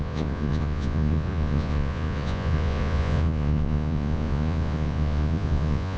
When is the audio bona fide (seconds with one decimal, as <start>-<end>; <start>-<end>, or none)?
none